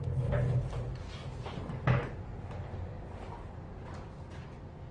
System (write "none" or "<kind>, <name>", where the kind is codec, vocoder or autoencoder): none